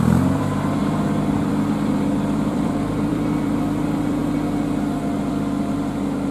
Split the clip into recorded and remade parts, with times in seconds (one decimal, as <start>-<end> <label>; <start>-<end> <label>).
0.0-4.2 remade; 4.2-5.3 recorded; 5.3-6.3 remade